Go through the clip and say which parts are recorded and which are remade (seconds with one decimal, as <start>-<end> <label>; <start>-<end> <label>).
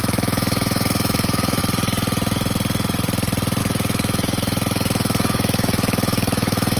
0.0-1.6 remade; 1.6-3.6 recorded; 3.6-6.8 remade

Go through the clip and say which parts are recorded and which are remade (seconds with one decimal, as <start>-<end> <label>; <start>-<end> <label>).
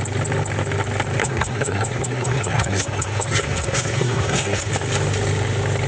0.0-1.2 recorded; 1.2-4.7 remade; 4.7-5.9 recorded